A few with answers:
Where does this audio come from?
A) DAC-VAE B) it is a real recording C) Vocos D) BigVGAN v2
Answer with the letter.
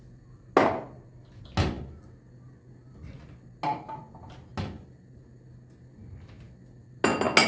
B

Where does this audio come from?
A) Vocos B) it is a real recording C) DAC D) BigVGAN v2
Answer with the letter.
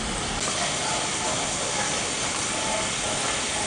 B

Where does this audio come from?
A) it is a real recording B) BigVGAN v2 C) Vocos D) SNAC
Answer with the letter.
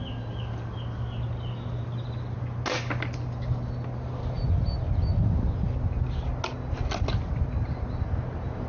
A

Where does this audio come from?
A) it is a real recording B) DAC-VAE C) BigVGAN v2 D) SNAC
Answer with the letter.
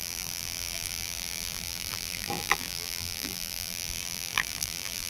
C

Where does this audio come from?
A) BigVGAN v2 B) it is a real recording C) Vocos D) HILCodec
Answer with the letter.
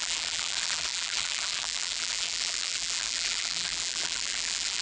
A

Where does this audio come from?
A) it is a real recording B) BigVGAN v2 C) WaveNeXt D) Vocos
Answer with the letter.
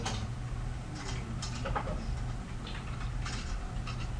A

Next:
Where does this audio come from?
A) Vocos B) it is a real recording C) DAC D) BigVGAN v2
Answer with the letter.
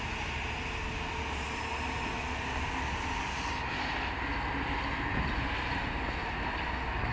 B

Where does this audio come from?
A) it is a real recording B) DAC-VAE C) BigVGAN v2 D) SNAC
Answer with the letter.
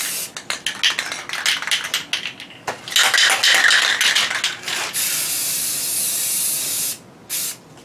A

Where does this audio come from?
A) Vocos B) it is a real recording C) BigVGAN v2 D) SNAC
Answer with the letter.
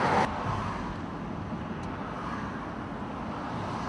B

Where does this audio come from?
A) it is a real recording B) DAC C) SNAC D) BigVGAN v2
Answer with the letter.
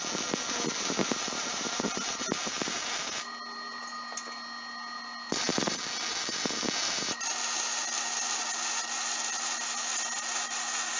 A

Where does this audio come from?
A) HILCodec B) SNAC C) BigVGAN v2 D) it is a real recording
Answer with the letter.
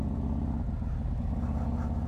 C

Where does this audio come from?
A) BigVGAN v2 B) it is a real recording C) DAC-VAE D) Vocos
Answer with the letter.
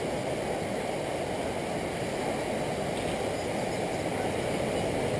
B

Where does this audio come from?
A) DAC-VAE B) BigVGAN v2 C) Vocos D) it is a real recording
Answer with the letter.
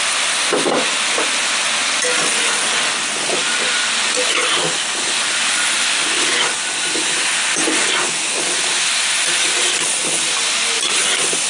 D